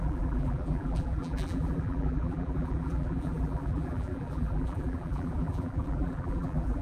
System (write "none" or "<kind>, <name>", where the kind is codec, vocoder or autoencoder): vocoder, BigVGAN v2